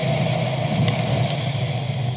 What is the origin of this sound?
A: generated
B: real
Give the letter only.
B